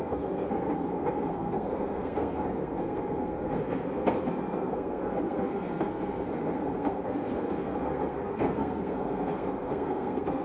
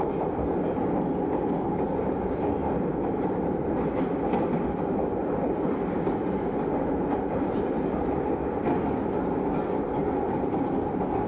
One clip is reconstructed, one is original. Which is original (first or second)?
second